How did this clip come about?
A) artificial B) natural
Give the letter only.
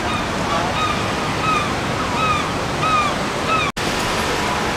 B